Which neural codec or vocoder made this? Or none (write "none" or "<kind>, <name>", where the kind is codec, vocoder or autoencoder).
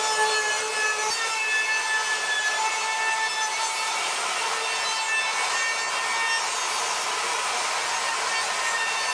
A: none